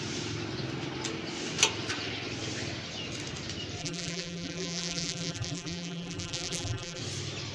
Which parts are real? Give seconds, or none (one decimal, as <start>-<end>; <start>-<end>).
0.0-3.8; 7.0-7.5